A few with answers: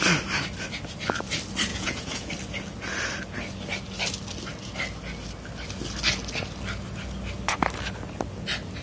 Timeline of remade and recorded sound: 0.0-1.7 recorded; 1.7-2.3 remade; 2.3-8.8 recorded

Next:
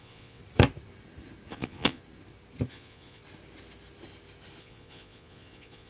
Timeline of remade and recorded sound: 0.0-0.4 remade; 0.4-1.5 recorded; 1.5-2.0 remade; 2.0-2.7 recorded; 2.7-3.2 remade; 3.2-4.6 recorded; 4.6-5.9 remade

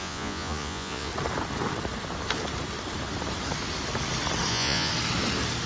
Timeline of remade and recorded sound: 0.0-1.1 remade; 1.1-4.5 recorded; 4.5-4.9 remade; 4.9-5.7 recorded